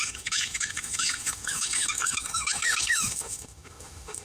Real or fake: fake